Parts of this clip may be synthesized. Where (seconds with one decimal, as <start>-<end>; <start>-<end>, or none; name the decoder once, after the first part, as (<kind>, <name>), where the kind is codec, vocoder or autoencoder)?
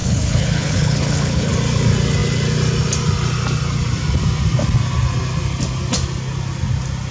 0.0-1.5 (codec, HILCodec)